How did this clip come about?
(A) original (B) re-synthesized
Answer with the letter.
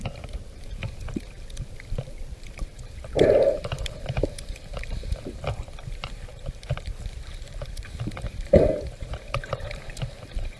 B